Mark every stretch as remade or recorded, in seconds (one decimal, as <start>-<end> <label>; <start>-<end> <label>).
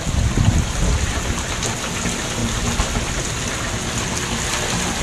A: 0.0-5.0 recorded